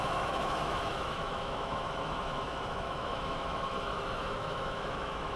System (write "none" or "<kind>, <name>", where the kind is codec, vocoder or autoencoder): autoencoder, DAC-VAE